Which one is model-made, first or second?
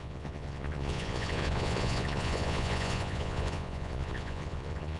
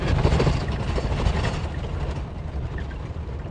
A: first